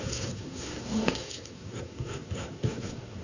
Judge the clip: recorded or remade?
remade